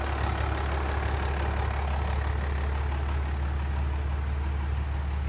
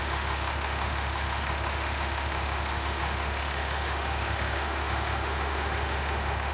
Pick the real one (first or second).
first